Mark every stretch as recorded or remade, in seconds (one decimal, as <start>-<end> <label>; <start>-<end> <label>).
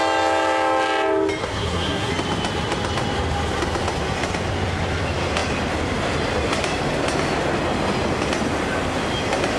0.0-1.4 recorded; 1.4-2.1 remade; 2.1-9.6 recorded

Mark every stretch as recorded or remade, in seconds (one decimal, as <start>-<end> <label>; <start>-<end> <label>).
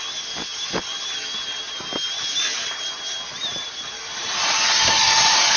0.0-3.4 recorded; 3.4-4.0 remade; 4.0-5.6 recorded